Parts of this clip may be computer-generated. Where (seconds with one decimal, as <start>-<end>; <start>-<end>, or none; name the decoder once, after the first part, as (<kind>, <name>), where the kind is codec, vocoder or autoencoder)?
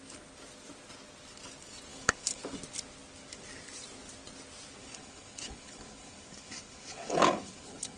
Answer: 1.9-2.4 (codec, HILCodec); 4.8-8.0